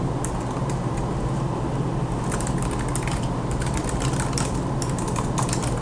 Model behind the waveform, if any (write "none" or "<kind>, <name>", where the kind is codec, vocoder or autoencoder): none